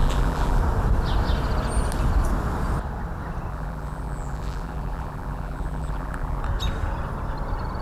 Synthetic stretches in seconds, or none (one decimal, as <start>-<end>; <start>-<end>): 0.0-0.6; 3.5-6.4